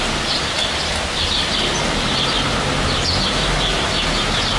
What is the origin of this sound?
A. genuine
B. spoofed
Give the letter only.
A